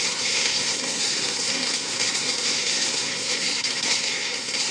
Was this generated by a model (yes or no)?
yes